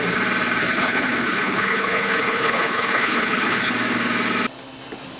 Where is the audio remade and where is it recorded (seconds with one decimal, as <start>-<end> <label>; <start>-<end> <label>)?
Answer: 0.0-0.6 recorded; 0.6-3.7 remade; 3.7-5.2 recorded